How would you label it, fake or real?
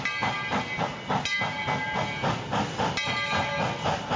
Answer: real